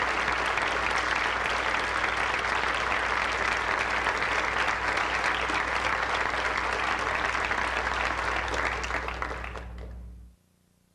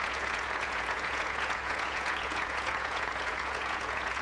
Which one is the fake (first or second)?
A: second